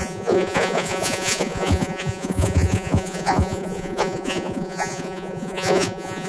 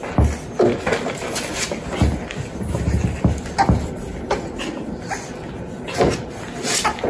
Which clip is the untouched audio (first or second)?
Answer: second